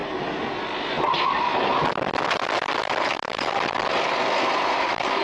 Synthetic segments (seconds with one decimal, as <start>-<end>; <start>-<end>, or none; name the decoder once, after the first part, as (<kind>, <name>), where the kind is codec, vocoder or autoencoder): none